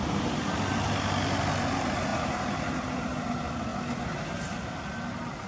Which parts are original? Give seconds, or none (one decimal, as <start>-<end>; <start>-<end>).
0.0-5.5